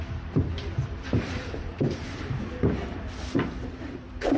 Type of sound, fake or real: fake